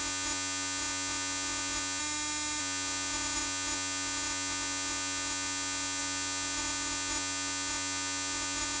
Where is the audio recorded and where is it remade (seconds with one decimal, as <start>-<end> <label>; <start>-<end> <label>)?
0.0-2.0 remade; 2.0-2.6 recorded; 2.6-8.8 remade